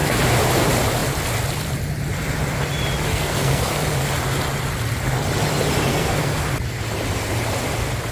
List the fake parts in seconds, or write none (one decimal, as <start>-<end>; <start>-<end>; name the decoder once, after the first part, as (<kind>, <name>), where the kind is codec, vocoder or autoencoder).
3.1-3.7 (codec, SNAC); 5.9-6.4